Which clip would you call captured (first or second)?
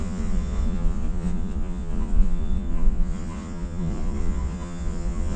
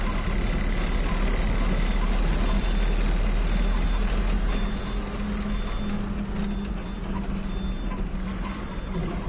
second